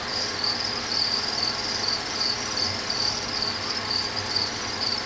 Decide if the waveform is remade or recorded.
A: remade